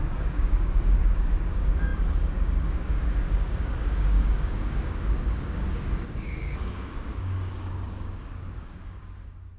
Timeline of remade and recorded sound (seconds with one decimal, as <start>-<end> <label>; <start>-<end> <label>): 0.0-9.6 remade